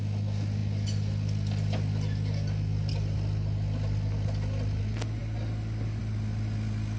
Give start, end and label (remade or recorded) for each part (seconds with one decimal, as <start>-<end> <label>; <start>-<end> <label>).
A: 0.0-7.0 recorded